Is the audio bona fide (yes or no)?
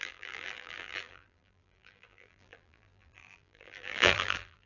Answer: no